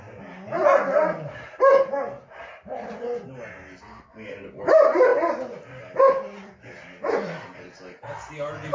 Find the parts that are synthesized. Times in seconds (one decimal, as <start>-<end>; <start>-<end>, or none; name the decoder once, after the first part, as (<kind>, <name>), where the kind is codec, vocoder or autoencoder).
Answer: 5.1-6.7 (vocoder, BigVGAN v2)